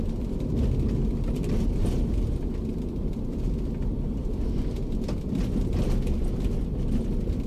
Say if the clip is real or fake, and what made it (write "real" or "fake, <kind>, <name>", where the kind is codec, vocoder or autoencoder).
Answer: real